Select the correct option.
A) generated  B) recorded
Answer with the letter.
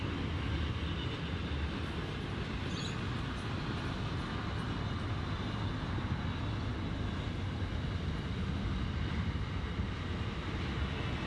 B